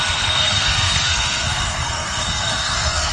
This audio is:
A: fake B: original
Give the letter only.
A